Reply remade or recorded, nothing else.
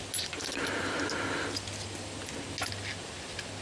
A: recorded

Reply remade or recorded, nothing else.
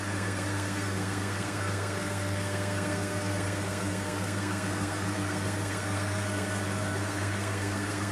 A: remade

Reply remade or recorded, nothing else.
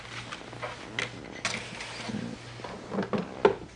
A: recorded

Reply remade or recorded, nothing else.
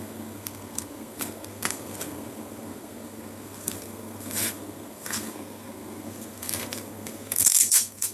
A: remade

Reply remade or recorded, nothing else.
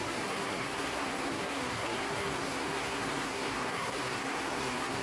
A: remade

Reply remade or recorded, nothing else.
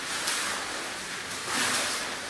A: recorded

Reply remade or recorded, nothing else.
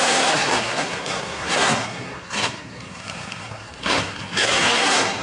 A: remade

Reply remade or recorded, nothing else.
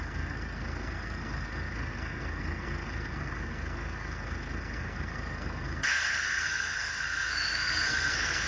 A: remade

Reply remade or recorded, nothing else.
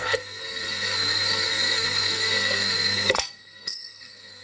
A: remade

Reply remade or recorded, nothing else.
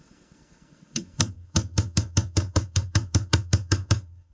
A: remade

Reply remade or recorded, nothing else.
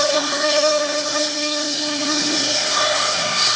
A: remade